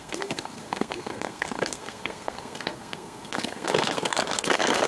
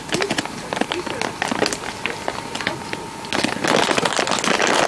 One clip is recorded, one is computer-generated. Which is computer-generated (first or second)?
first